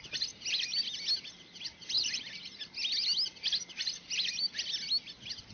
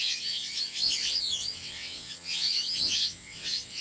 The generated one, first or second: second